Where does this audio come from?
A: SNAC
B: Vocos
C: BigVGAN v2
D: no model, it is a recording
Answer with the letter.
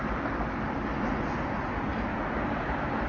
D